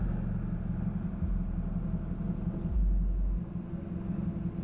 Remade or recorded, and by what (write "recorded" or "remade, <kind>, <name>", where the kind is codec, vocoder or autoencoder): recorded